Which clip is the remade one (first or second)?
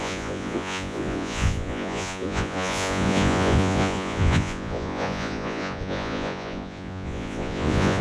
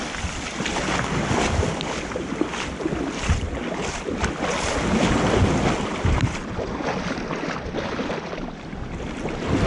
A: first